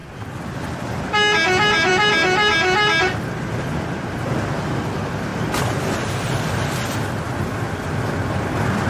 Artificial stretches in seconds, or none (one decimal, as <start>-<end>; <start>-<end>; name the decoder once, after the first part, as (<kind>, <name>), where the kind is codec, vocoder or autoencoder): none